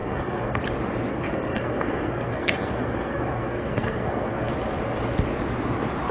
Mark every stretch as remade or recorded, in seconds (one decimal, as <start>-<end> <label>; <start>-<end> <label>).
0.0-0.6 remade; 0.6-1.1 recorded; 1.1-4.5 remade; 4.5-6.1 recorded